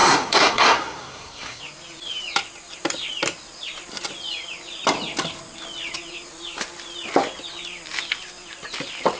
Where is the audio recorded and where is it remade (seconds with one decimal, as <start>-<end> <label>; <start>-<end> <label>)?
0.0-1.6 remade; 1.6-9.2 recorded